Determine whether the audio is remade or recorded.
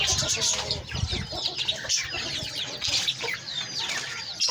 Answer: recorded